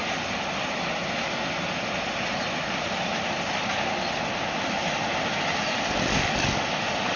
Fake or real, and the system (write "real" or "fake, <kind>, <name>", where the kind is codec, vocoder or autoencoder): real